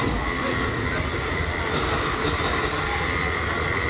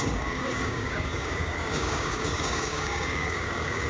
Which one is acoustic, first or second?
first